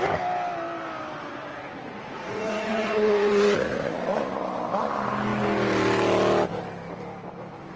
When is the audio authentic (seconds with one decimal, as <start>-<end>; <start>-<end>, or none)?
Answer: 0.0-1.5; 4.0-7.8